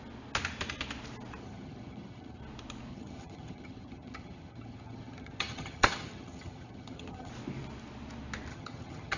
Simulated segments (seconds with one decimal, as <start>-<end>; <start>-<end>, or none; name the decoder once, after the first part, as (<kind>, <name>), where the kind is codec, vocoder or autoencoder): 1.4-2.4 (vocoder, HiFi-GAN); 2.9-7.3; 8.5-9.2